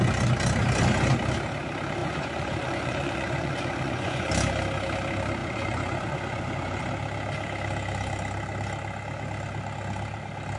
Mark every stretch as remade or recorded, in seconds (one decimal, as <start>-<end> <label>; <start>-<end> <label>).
0.0-2.0 recorded; 2.0-4.3 remade; 4.3-5.4 recorded; 5.4-6.9 remade; 6.9-10.6 recorded